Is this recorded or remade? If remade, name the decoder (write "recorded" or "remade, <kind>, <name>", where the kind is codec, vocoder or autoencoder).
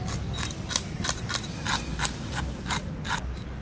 recorded